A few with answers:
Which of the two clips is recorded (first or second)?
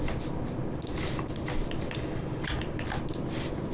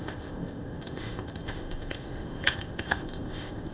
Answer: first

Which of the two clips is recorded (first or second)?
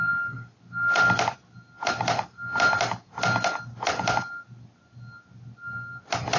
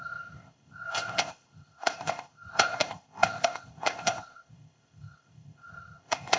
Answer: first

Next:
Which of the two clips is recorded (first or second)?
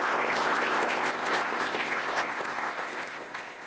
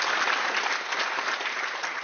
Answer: second